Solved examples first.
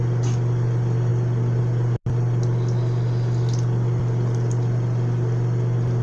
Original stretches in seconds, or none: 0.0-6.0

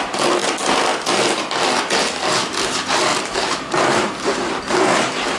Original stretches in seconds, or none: 0.0-3.1; 4.6-5.4

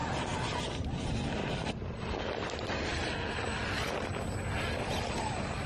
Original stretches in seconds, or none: 0.0-0.6; 1.4-4.7

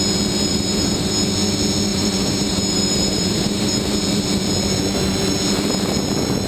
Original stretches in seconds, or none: 0.0-0.5; 1.1-1.9; 3.7-6.5